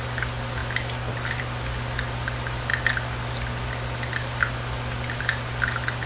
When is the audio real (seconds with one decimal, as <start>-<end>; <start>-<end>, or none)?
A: 0.0-6.1